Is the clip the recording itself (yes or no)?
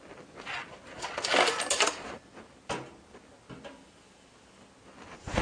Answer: yes